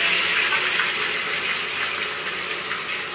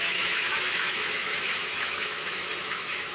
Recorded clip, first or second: first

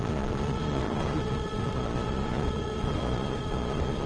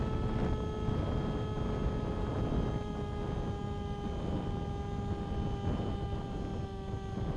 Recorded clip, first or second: second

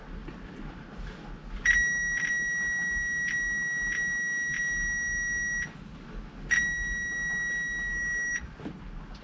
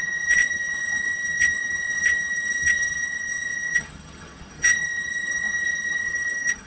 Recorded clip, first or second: first